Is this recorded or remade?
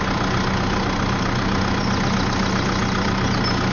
recorded